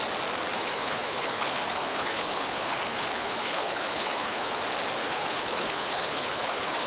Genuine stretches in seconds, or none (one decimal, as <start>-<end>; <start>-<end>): 0.0-0.5; 4.6-5.0